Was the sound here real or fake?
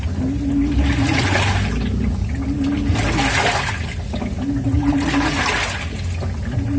real